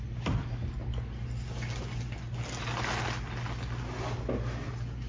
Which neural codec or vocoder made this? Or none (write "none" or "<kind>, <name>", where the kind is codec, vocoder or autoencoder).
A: none